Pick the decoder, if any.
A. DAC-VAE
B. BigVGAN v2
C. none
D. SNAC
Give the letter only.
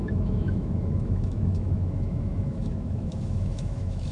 A